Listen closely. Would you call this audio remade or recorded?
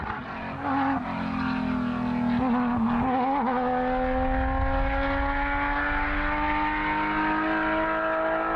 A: recorded